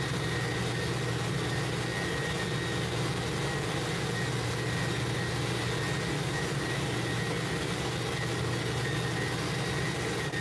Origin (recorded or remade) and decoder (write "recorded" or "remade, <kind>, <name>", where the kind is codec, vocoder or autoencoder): recorded